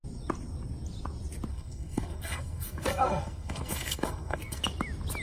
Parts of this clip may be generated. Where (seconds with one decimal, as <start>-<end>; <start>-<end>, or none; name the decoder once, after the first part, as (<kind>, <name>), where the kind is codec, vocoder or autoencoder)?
1.5-4.6 (codec, SNAC)